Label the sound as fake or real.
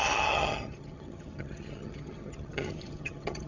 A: fake